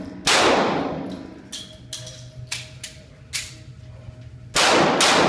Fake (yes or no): no